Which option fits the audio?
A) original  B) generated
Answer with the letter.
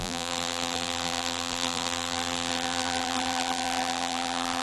B